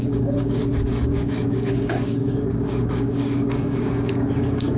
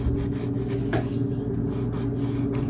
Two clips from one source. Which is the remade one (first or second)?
first